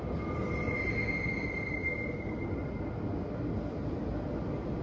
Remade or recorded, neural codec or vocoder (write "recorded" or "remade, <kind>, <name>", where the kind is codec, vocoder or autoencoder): recorded